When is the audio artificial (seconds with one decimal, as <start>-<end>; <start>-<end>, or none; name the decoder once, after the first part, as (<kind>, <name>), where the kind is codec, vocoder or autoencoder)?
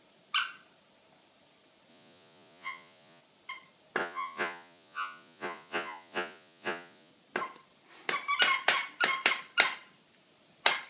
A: 1.9-3.2 (vocoder, Vocos); 4.0-7.1